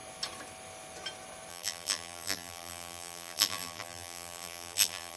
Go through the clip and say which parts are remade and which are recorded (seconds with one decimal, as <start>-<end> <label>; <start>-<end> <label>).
0.0-1.5 recorded; 1.5-5.2 remade